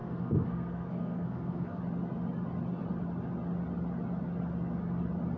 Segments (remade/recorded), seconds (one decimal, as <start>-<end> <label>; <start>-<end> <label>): 0.0-1.8 remade; 1.8-5.4 recorded